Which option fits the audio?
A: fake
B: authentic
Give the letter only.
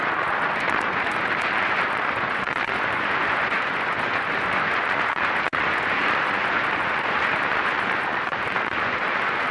A